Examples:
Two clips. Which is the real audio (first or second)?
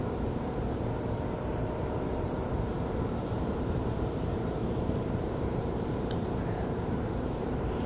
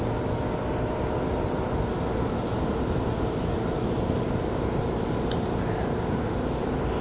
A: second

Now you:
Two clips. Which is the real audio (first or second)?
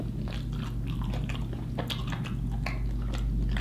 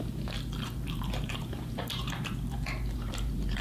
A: first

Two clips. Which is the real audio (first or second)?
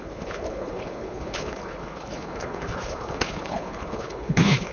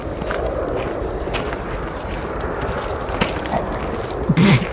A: second